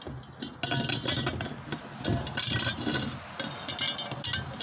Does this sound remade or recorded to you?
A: recorded